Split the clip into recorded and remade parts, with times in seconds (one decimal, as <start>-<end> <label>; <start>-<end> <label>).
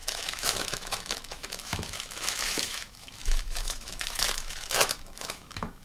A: 0.0-5.8 remade